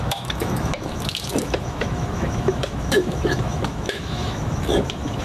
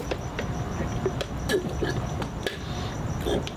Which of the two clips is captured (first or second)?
second